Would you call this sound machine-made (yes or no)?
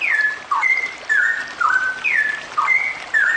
no